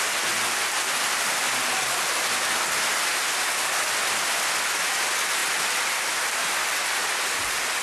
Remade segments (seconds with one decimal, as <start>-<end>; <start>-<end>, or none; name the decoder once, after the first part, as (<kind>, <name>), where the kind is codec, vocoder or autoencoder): none